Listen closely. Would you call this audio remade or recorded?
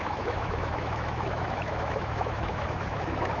remade